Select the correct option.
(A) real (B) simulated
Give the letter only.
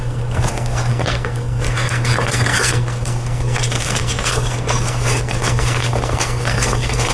B